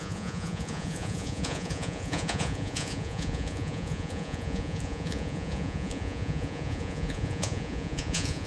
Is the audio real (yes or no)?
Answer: no